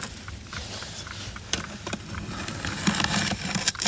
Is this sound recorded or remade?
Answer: remade